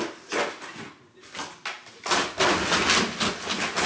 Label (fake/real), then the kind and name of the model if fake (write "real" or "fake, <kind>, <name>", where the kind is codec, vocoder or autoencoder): real